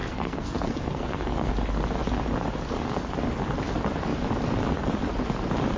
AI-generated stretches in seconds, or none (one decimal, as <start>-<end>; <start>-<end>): 0.0-1.5